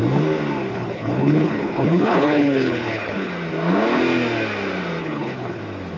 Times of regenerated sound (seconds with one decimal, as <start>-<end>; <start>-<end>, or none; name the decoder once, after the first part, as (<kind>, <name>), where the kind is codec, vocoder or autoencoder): 0.7-3.3 (codec, HILCodec); 5.0-5.6

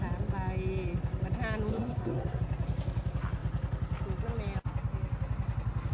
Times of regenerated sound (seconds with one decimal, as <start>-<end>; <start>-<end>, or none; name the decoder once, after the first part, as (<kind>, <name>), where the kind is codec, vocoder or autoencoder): 1.7-2.4 (codec, SNAC)

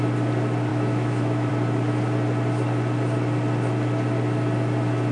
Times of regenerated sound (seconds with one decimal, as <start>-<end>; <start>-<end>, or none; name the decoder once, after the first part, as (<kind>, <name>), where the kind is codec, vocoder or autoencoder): 0.7-1.5 (autoencoder, DAC-VAE)

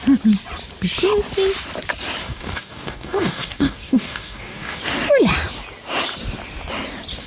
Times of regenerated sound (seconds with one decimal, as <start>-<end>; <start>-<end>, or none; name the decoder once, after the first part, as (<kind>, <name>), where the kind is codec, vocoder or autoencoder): 2.2-4.8 (codec, DAC)

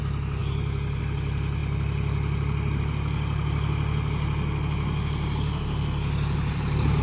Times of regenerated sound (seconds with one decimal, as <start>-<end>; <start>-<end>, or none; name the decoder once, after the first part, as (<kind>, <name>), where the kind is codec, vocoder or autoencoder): 0.4-1.0 (vocoder, BigVGAN v2)

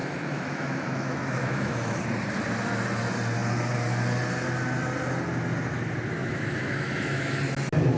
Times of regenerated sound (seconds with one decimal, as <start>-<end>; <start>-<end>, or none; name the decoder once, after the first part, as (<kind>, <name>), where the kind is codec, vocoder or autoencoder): 0.0-2.0 (autoencoder, DAC-VAE); 6.2-7.4

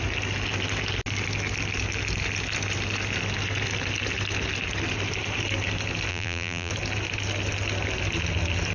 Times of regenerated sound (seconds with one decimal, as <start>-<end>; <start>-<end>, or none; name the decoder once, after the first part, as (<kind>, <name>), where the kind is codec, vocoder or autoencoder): 6.1-6.7 (vocoder, BigVGAN v2)

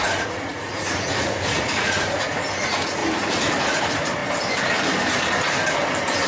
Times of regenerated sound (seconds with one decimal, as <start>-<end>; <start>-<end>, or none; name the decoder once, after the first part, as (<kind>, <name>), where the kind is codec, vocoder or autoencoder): 0.0-3.0 (vocoder, Vocos); 3.6-4.2